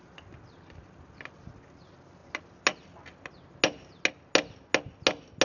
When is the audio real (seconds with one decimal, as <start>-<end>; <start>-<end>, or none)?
0.0-5.4